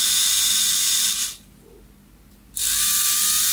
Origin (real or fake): real